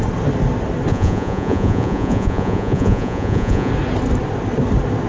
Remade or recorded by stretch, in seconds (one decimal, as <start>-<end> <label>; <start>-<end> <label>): 0.0-0.9 recorded; 0.9-3.7 remade; 3.7-5.1 recorded